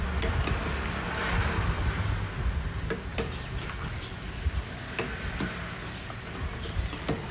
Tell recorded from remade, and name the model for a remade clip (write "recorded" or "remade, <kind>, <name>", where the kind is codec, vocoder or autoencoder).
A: recorded